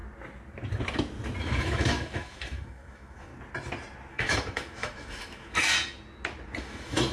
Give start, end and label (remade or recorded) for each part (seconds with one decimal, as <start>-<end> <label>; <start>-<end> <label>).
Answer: 0.0-1.4 recorded; 1.4-3.3 remade; 3.3-4.1 recorded; 4.1-5.7 remade; 5.7-6.6 recorded; 6.6-7.1 remade